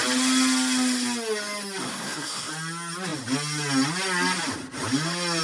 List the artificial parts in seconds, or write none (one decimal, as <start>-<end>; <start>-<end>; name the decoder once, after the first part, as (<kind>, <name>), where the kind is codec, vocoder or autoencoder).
1.9-2.5 (codec, SNAC)